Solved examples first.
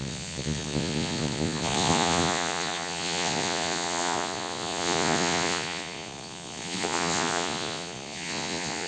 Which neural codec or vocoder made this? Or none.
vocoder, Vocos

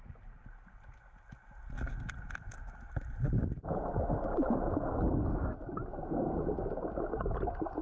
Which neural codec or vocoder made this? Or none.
none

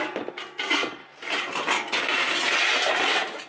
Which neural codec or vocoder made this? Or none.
none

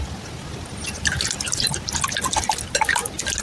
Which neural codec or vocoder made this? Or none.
none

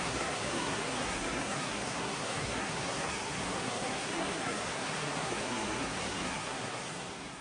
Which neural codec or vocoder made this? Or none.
codec, SNAC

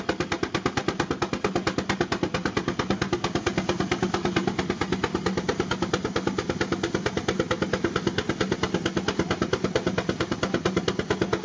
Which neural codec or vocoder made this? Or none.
none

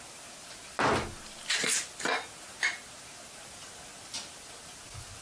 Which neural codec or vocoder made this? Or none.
none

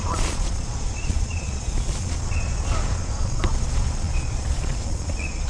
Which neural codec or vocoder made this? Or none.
vocoder, Vocos